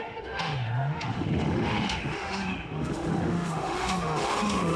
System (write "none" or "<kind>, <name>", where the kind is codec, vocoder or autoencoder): autoencoder, DAC-VAE